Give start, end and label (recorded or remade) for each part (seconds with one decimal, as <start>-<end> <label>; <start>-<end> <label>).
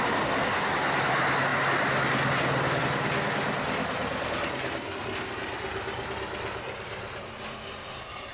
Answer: 0.0-8.3 recorded